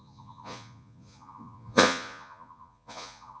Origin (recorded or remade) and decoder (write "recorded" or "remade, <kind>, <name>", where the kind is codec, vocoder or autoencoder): remade, vocoder, Vocos